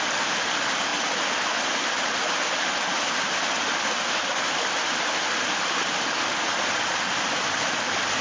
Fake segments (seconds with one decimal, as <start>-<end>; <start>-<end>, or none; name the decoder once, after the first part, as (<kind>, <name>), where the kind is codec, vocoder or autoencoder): none

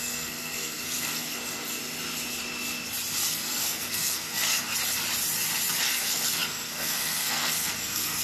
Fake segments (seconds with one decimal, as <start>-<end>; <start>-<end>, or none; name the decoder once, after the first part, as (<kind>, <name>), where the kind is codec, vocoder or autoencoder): 0.0-1.8 (codec, SNAC); 3.3-4.7; 5.7-8.2

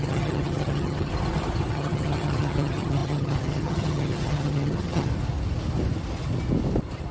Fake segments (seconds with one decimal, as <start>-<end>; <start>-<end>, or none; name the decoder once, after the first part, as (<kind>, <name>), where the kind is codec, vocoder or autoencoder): 0.0-1.1 (vocoder, HiFi-GAN); 1.7-5.1

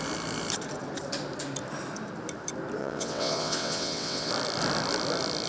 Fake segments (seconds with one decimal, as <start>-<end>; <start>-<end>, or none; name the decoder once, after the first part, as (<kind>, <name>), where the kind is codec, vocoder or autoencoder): 2.8-4.3 (vocoder, WaveNeXt)

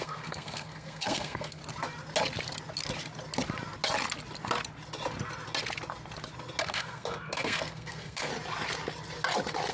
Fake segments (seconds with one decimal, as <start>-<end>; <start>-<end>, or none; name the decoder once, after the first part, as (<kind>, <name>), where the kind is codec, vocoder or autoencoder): 0.0-1.6 (codec, SNAC); 6.6-8.3

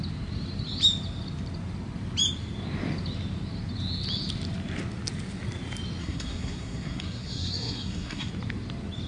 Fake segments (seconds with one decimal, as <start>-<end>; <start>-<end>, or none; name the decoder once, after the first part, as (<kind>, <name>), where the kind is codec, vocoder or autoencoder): 6.0-8.3 (codec, SNAC)

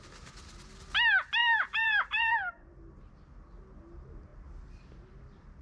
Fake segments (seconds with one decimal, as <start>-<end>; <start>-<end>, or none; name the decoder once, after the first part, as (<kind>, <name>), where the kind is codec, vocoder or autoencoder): 1.4-3.1 (vocoder, BigVGAN v2)

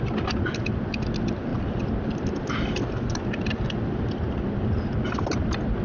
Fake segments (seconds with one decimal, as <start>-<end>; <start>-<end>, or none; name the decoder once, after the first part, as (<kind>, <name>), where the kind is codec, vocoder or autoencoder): none